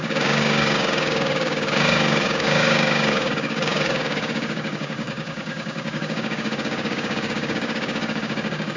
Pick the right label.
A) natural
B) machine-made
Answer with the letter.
B